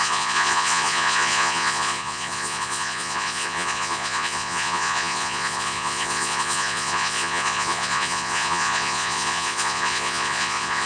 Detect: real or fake fake